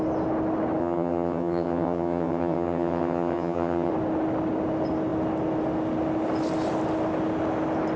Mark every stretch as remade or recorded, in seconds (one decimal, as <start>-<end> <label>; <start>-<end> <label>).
0.0-0.8 recorded; 0.8-3.9 remade; 3.9-8.0 recorded

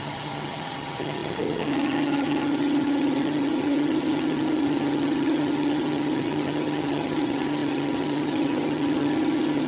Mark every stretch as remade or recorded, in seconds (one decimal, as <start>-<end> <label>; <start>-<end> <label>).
0.0-9.7 remade

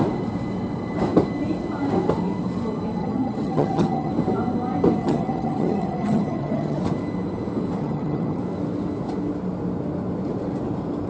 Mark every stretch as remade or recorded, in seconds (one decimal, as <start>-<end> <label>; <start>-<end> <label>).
0.0-3.0 recorded; 3.0-4.1 remade; 4.1-5.0 recorded; 5.0-6.8 remade; 6.8-7.8 recorded; 7.8-8.4 remade; 8.4-11.1 recorded

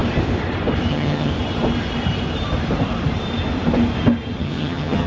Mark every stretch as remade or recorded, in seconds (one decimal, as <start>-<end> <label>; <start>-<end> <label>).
0.0-0.9 recorded; 0.9-1.3 remade; 1.3-4.4 recorded; 4.4-5.1 remade

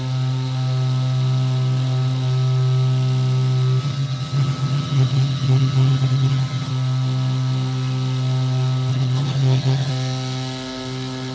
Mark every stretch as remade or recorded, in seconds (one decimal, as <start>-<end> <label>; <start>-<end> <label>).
0.0-3.8 recorded; 3.8-6.7 remade; 6.7-8.9 recorded; 8.9-9.9 remade; 9.9-11.3 recorded

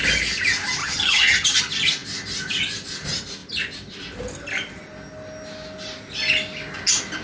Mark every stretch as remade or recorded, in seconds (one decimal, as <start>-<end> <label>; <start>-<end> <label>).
0.0-0.8 recorded; 0.8-1.6 remade; 1.6-7.2 recorded